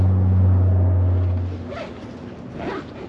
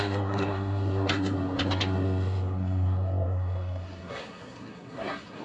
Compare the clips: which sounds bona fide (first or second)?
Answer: first